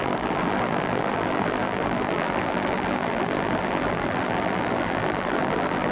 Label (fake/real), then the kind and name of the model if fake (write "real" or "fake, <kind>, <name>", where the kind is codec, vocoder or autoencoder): fake, vocoder, BigVGAN v2